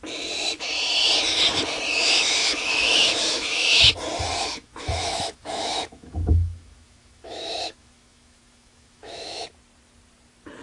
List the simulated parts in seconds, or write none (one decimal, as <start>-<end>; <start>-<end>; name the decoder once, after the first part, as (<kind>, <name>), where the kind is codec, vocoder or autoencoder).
2.4-3.9 (autoencoder, DAC-VAE); 4.3-9.4